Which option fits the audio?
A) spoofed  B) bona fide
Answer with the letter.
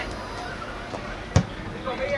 B